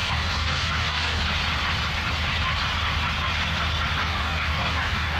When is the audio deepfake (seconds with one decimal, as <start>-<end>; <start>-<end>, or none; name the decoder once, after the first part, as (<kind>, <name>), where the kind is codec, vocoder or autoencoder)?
0.0-1.2 (codec, DAC); 4.0-5.2